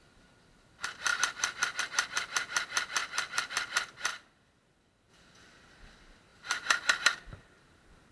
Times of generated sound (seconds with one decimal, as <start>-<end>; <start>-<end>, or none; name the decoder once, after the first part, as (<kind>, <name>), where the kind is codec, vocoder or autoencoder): 3.0-3.5 (vocoder, BigVGAN v2); 4.1-5.1; 6.3-8.1